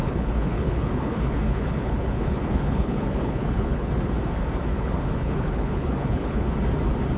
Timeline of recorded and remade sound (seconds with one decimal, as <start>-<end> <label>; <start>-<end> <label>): 0.0-3.9 remade; 3.9-4.7 recorded; 4.7-6.5 remade; 6.5-7.2 recorded